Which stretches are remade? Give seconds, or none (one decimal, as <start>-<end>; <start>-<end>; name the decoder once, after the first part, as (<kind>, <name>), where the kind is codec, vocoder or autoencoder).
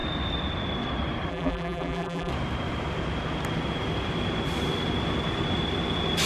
1.3-2.3 (vocoder, BigVGAN v2)